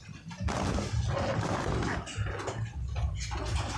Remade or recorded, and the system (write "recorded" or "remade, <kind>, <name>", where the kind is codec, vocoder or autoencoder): recorded